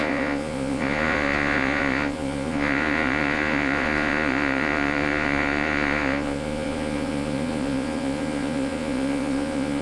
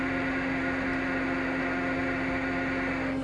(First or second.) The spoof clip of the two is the first